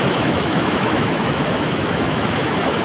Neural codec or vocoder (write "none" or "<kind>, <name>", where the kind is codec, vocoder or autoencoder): autoencoder, DAC-VAE